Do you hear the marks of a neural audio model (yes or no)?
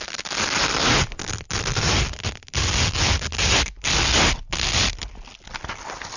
no